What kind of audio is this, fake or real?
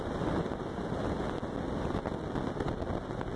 real